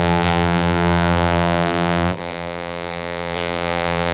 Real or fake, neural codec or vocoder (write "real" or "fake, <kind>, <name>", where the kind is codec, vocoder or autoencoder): fake, vocoder, BigVGAN v2